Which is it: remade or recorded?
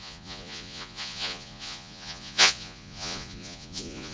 remade